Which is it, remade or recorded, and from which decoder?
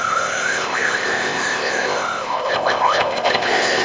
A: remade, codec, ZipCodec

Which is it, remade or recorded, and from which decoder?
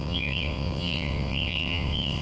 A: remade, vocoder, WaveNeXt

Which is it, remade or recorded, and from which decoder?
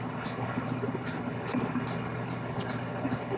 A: remade, codec, HILCodec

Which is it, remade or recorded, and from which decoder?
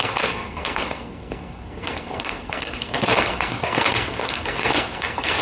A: remade, codec, SNAC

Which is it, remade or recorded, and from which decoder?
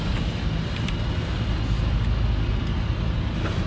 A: recorded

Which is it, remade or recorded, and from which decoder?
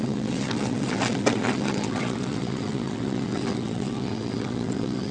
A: remade, vocoder, WaveNeXt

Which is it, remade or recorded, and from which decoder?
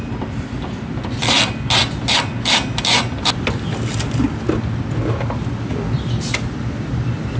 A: recorded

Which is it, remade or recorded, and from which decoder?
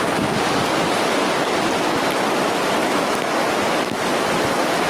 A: recorded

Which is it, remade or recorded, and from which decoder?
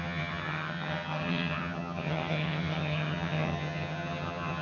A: remade, vocoder, HiFi-GAN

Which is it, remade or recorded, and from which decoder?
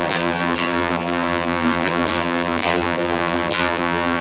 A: remade, vocoder, BigVGAN v2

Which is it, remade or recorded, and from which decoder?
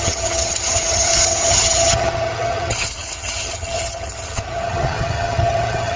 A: remade, vocoder, HiFi-GAN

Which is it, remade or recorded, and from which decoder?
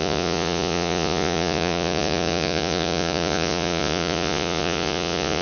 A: remade, vocoder, Vocos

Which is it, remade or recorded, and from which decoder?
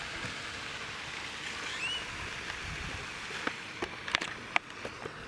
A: recorded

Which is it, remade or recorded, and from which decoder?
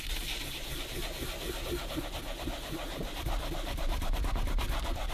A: recorded